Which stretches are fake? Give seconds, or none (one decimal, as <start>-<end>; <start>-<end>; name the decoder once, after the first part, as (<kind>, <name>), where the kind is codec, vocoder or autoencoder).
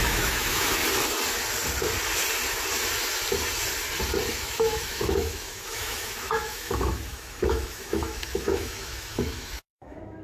0.0-0.8 (autoencoder, DAC-VAE); 4.3-10.2